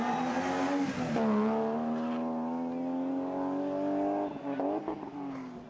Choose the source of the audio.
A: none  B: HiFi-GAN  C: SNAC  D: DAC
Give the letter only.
A